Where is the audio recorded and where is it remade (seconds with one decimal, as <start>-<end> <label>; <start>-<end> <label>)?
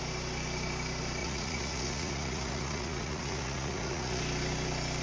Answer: 0.0-1.2 recorded; 1.2-4.2 remade; 4.2-5.0 recorded